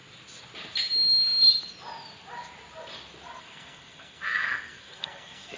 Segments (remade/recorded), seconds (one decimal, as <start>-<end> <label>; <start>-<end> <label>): 0.0-3.4 recorded; 3.4-5.6 remade